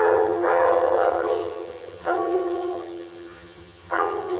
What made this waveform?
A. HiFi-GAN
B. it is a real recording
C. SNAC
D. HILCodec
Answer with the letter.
A